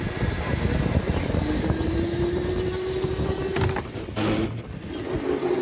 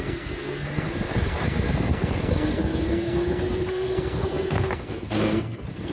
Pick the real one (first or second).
first